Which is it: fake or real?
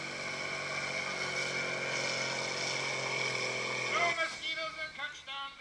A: real